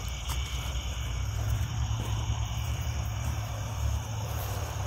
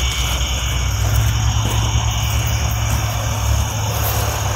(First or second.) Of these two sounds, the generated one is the first